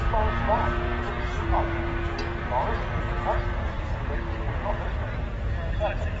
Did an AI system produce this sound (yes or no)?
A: no